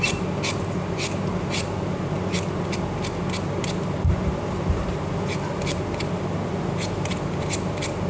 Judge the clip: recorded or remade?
recorded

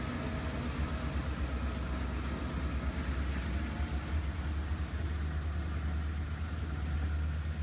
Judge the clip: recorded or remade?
recorded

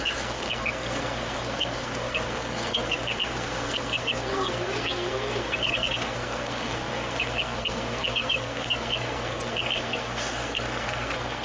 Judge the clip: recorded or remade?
remade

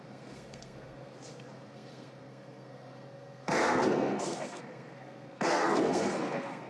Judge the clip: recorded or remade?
remade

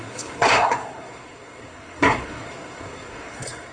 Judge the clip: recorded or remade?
remade